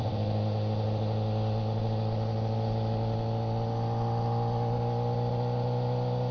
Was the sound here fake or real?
real